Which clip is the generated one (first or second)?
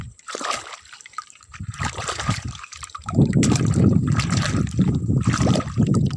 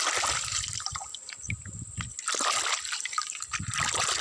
first